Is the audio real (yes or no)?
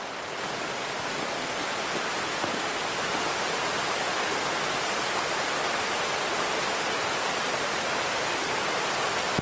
yes